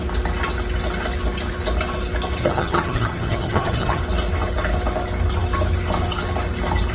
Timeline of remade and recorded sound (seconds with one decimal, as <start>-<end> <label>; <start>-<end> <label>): 0.0-2.4 recorded; 2.4-4.0 remade; 4.0-6.9 recorded